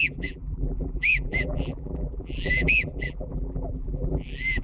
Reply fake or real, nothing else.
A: fake